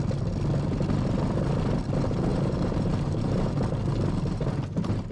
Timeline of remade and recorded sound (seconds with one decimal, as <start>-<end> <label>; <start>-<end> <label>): 0.0-2.3 recorded; 2.3-3.5 remade; 3.5-5.1 recorded

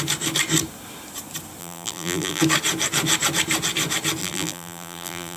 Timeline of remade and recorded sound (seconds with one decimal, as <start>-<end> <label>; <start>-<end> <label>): 0.0-1.6 recorded; 1.6-2.4 remade; 2.4-4.2 recorded; 4.2-5.4 remade

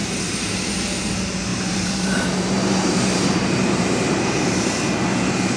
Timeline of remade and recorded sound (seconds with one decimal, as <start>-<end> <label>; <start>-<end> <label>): 0.0-0.7 remade; 0.7-1.5 recorded; 1.5-4.7 remade; 4.7-5.6 recorded